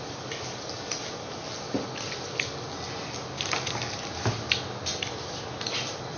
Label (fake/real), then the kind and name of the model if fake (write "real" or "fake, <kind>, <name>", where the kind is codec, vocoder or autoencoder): real